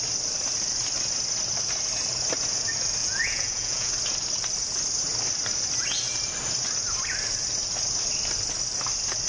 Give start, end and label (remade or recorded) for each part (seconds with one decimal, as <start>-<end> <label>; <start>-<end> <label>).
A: 0.0-3.0 recorded; 3.0-3.9 remade; 3.9-9.3 recorded